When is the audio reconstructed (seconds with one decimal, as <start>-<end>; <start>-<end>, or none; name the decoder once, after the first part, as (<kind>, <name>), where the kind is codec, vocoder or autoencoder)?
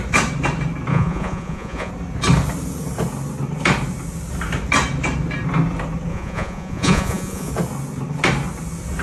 0.9-1.9 (vocoder, Vocos); 6.1-7.5